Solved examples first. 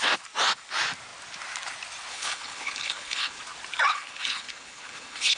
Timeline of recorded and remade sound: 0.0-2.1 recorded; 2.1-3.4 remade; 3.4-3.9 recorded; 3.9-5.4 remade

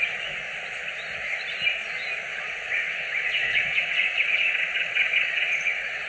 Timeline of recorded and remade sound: 0.0-2.3 recorded; 2.3-6.1 remade

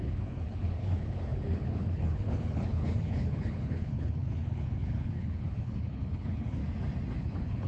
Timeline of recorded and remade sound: 0.0-6.6 remade; 6.6-7.2 recorded; 7.2-7.7 remade

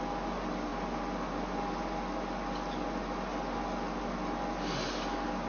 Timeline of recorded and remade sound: 0.0-5.5 recorded

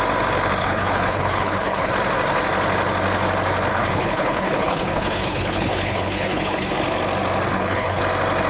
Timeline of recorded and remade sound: 0.0-0.6 recorded; 0.6-1.9 remade; 1.9-3.7 recorded; 3.7-6.7 remade; 6.7-7.5 recorded; 7.5-8.0 remade; 8.0-8.5 recorded

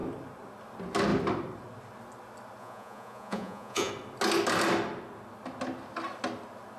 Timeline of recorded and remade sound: 0.0-2.6 recorded; 2.6-3.9 remade; 3.9-6.8 recorded

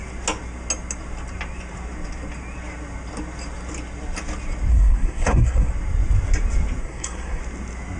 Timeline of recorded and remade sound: 0.0-4.7 recorded; 4.7-5.7 remade; 5.7-6.8 recorded; 6.8-7.4 remade; 7.4-8.0 recorded